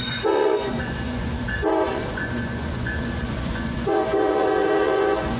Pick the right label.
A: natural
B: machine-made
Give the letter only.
B